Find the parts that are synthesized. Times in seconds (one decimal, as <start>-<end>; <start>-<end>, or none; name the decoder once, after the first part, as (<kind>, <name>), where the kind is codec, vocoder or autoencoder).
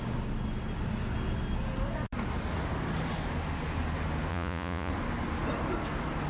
4.3-4.9 (vocoder, Vocos)